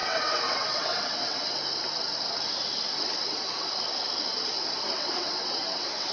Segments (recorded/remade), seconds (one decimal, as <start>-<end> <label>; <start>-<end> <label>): 0.0-1.6 remade; 1.6-4.9 recorded; 4.9-6.1 remade